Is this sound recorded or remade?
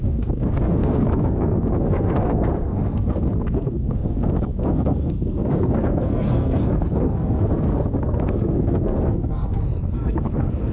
remade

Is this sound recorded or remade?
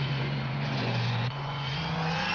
remade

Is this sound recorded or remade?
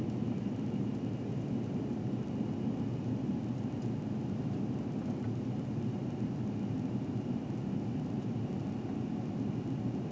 recorded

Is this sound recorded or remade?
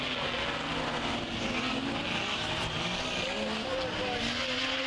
recorded